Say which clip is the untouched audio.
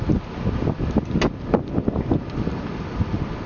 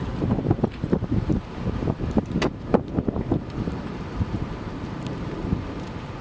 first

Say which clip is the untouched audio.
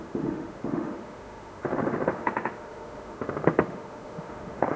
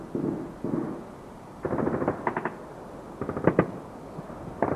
second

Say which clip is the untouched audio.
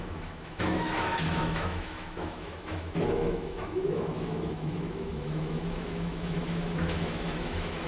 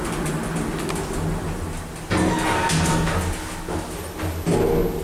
second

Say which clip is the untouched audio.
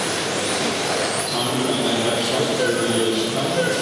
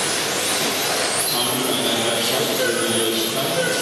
second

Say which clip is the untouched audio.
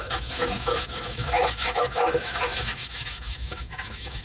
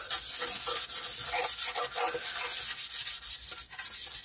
second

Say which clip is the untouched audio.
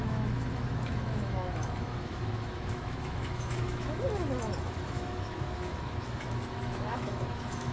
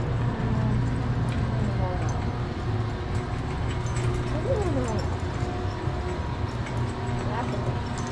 second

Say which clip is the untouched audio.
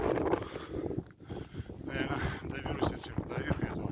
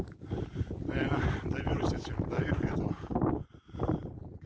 first